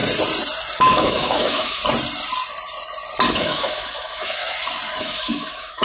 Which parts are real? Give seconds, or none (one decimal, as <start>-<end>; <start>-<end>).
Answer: 0.0-0.8; 1.8-3.3; 4.4-5.0